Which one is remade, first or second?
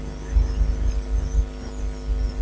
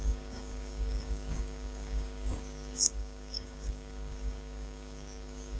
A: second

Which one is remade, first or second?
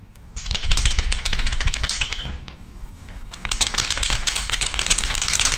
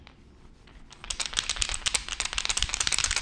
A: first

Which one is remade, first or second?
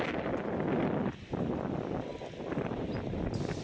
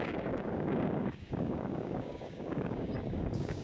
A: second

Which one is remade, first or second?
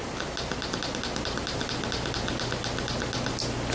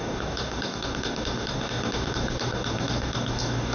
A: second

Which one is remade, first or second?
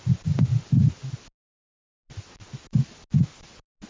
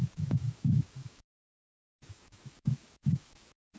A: second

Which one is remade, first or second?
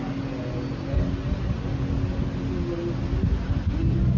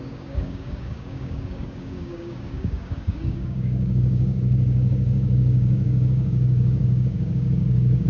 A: second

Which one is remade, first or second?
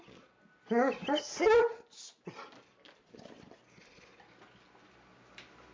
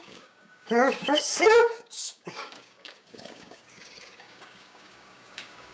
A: second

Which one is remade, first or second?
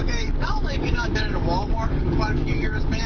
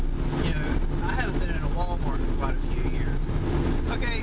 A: first